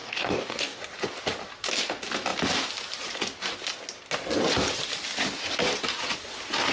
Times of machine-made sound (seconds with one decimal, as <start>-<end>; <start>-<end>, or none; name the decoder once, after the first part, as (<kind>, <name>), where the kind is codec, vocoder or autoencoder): 0.0-0.8 (codec, DAC)